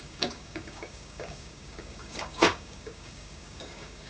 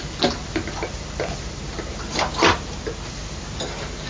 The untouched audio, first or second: second